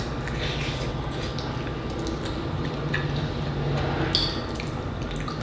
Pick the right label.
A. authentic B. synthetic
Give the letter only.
A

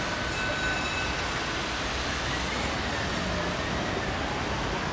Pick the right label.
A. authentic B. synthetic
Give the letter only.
A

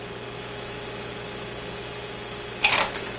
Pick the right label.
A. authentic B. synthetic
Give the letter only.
A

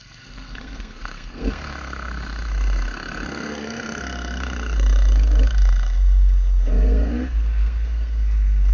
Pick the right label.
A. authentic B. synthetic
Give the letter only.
B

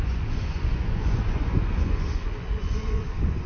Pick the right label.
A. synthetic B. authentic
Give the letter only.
A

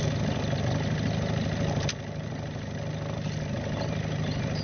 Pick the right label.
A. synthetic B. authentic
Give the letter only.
B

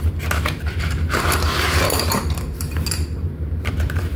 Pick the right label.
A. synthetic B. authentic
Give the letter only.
A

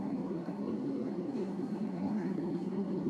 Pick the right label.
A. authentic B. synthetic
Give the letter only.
B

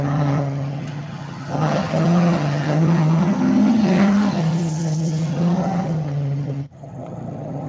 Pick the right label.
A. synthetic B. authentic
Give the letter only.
A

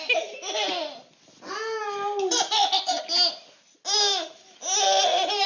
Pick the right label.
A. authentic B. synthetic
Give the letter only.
A